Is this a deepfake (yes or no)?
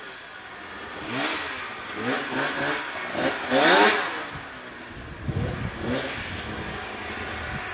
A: no